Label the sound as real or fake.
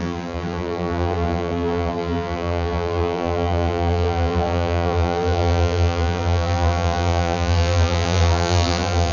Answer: fake